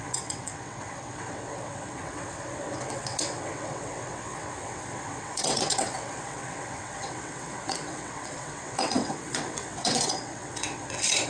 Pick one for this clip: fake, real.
fake